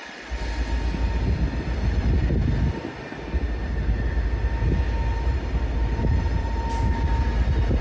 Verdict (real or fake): real